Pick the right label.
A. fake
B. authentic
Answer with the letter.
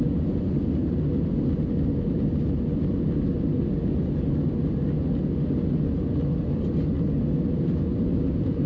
B